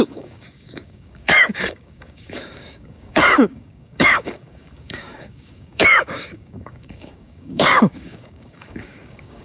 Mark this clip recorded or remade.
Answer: remade